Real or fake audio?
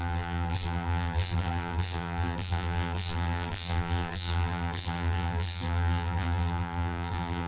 fake